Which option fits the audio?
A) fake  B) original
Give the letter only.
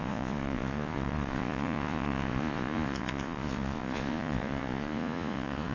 A